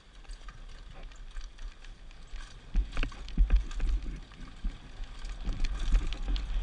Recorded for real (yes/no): yes